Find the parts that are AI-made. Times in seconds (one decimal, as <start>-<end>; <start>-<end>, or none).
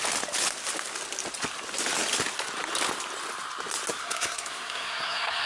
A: 4.0-5.5